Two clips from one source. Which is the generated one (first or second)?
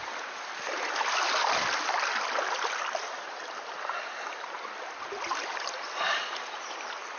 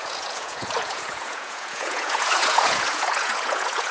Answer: second